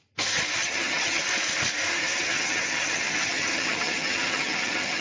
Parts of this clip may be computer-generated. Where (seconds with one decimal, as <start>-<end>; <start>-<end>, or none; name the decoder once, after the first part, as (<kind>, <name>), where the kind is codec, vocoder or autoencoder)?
0.6-1.2 (vocoder, HiFi-GAN); 1.9-5.0